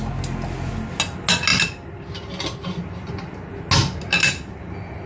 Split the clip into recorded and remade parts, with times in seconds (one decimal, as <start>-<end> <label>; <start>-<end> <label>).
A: 0.0-5.1 recorded